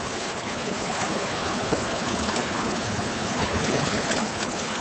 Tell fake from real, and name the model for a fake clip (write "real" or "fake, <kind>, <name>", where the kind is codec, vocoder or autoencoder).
fake, codec, HILCodec